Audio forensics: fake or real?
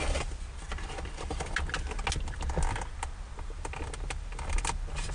real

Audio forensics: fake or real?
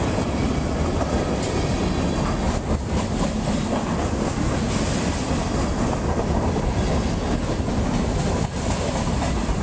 real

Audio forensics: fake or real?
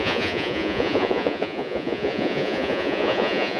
fake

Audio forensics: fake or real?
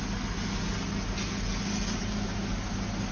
real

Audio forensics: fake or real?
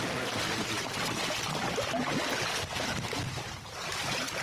real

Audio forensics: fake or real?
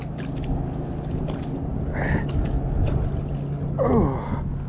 real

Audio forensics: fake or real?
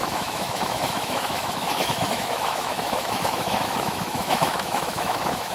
fake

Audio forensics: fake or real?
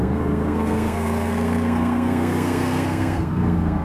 fake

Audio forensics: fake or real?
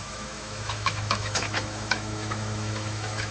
fake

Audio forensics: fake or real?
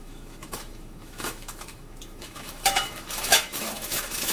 fake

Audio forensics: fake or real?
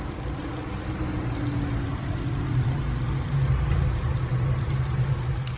real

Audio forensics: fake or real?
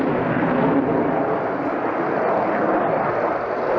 real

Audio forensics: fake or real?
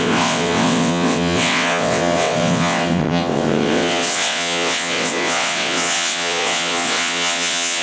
fake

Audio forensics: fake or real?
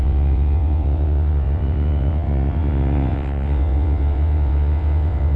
fake